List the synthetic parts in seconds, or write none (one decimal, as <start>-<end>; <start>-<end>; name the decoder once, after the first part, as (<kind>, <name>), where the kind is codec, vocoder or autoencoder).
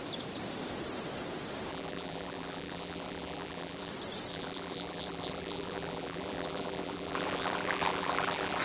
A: 1.7-3.9 (vocoder, BigVGAN v2); 4.3-8.6